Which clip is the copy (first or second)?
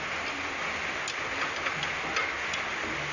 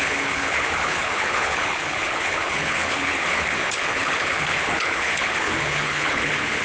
second